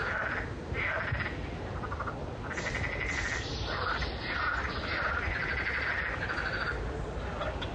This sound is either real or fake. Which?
real